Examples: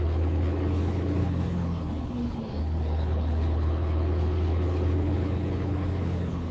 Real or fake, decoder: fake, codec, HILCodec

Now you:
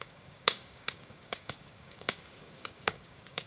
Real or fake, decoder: fake, codec, DAC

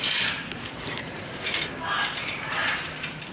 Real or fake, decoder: fake, vocoder, BigVGAN v2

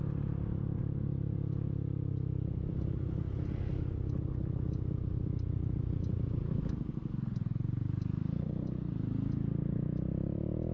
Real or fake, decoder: real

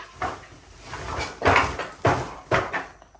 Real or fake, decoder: real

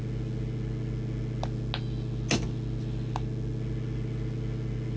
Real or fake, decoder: real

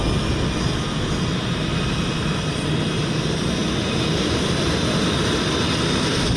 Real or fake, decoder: real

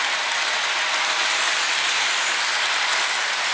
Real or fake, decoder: real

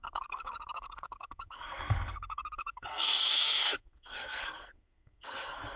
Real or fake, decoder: fake, codec, SNAC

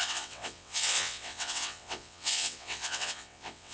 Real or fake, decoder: fake, vocoder, WaveNeXt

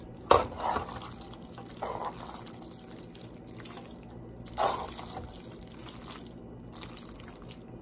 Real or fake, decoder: real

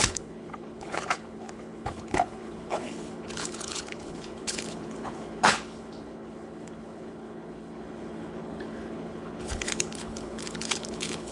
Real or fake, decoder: fake, codec, HILCodec